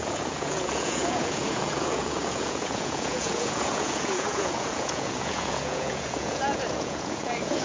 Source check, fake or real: fake